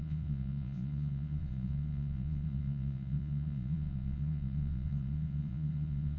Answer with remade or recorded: remade